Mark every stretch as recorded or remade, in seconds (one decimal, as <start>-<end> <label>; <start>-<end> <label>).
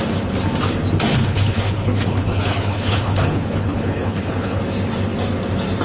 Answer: 0.0-1.1 recorded; 1.1-4.6 remade; 4.6-5.8 recorded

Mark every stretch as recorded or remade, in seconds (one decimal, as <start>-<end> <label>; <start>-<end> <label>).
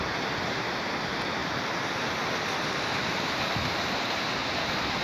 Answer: 0.0-5.0 remade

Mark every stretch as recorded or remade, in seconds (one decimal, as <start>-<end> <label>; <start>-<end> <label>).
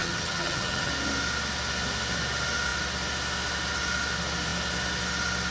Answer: 0.0-0.9 remade; 0.9-5.5 recorded